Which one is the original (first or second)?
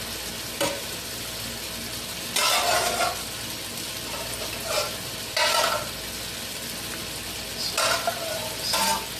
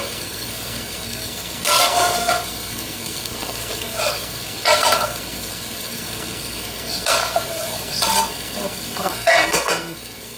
first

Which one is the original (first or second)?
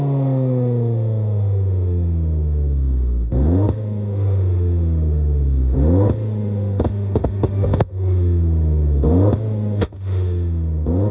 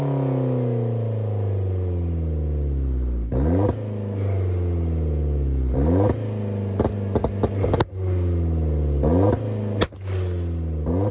second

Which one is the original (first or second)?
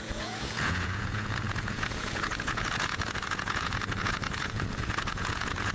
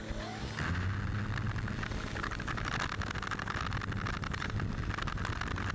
second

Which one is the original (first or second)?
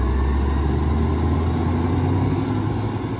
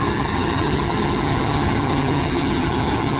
first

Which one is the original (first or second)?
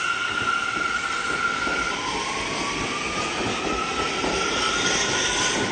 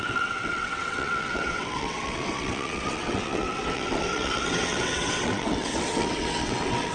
first